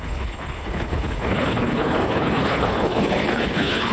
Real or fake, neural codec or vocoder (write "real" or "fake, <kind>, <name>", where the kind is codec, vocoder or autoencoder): fake, codec, HILCodec